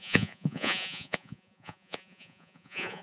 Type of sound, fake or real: fake